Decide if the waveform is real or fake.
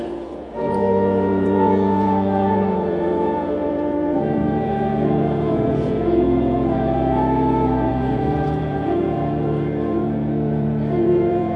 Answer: fake